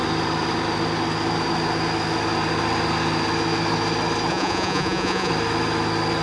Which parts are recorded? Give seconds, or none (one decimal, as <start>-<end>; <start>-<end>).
0.0-4.3; 5.3-6.2